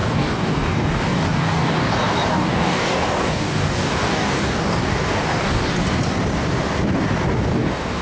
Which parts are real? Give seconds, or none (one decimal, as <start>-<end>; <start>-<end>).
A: 1.9-2.3; 5.6-7.5

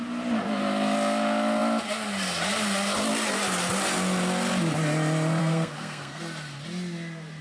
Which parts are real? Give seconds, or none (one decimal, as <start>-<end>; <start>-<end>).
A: 0.0-5.4; 6.2-7.4

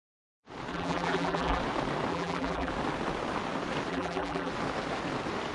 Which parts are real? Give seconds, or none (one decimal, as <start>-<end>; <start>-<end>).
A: 0.0-0.7; 1.6-2.1; 2.7-3.9; 4.5-5.5

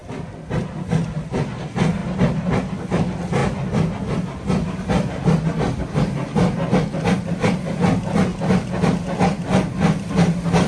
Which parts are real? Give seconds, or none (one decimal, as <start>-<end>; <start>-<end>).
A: 0.0-10.7

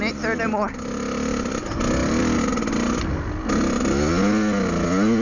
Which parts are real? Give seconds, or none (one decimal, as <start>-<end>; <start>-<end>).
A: 0.0-5.2

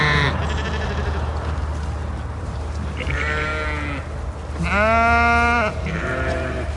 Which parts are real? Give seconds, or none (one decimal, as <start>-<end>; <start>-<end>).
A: 0.4-2.4; 3.5-5.7

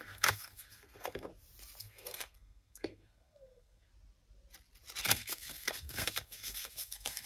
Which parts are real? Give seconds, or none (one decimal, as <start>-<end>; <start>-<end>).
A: 1.3-1.8; 3.9-5.0

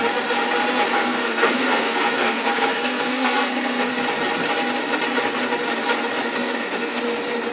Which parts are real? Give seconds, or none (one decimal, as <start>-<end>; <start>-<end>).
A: 0.0-0.9; 3.9-6.4; 7.0-7.5